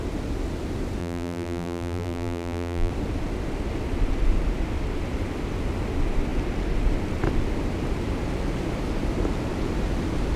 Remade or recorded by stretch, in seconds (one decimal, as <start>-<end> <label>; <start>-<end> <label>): 0.0-1.0 recorded; 1.0-2.9 remade; 2.9-10.4 recorded